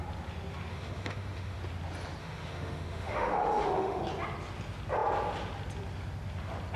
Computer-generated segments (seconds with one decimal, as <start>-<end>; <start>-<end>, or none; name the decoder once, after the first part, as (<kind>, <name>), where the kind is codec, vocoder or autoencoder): 0.7-1.6 (autoencoder, DAC-VAE); 2.2-4.0